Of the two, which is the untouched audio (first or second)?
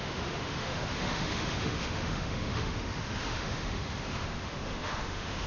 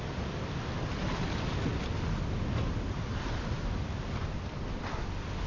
second